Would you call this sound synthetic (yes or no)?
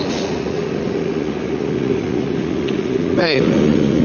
yes